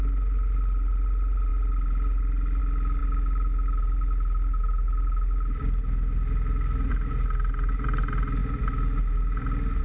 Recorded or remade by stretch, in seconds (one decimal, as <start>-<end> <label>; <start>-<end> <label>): 0.0-9.8 recorded